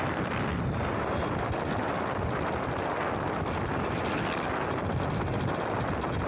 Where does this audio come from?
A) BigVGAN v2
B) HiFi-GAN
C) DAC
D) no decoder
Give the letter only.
D